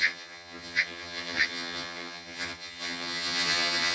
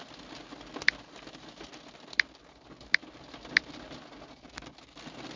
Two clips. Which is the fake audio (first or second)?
first